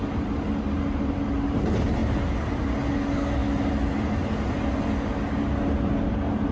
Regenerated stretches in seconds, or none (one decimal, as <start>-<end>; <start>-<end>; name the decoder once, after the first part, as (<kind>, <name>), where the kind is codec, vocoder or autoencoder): none